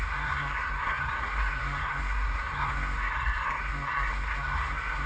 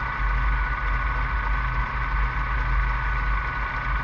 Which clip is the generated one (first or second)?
first